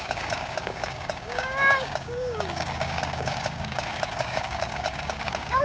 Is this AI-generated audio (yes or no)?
yes